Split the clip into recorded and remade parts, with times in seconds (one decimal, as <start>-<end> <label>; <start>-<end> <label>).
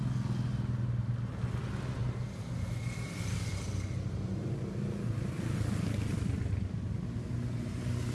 0.0-8.1 recorded